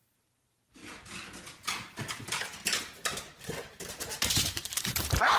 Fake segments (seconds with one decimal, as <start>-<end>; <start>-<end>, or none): 0.0-0.8; 4.0-5.4